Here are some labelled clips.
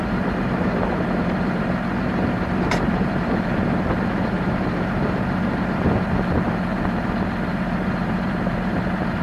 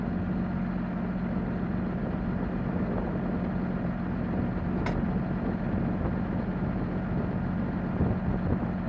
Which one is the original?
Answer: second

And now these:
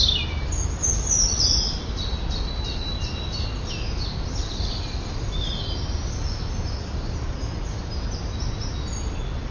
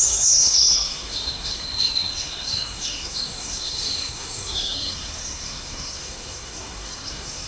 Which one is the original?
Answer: first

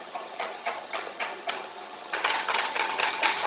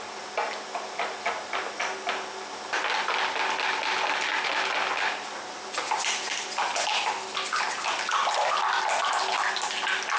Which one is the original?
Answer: second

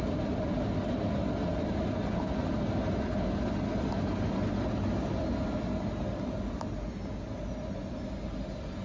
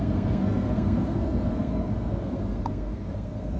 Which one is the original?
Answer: first